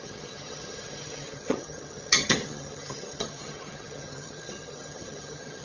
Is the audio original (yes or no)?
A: no